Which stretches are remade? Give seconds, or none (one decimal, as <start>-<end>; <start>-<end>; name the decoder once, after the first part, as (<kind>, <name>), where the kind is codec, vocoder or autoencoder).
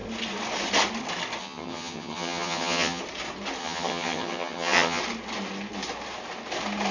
1.4-3.0 (vocoder, HiFi-GAN); 3.6-5.0